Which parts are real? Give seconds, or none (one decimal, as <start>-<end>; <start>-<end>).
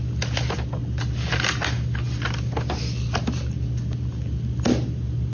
0.0-5.3